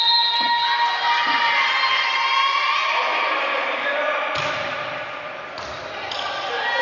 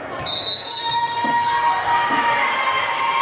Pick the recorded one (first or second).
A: first